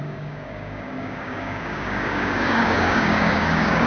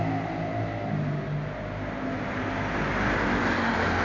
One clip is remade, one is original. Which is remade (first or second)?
first